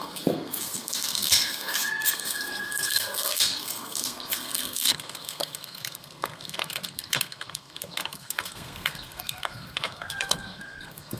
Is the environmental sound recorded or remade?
remade